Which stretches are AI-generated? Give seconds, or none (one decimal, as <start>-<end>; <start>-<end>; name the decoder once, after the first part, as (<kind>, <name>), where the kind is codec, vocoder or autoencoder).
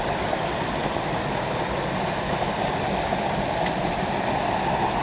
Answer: none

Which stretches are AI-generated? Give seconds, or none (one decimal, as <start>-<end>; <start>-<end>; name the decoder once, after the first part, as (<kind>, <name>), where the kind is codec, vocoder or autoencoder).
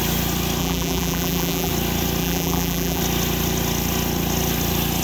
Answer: 0.6-1.7 (vocoder, BigVGAN v2); 2.2-3.0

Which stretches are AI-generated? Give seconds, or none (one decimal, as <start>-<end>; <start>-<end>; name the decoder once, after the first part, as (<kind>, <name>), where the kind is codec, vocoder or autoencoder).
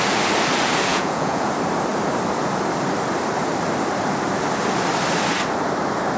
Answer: 0.9-1.5 (vocoder, Vocos)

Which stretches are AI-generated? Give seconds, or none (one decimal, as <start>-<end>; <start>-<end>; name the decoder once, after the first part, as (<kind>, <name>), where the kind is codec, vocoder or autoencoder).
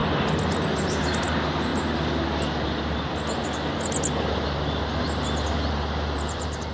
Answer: 1.2-1.7 (vocoder, BigVGAN v2); 5.7-6.7